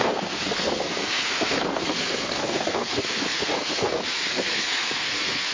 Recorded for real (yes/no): no